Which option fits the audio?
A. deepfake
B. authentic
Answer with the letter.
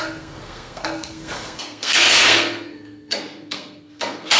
A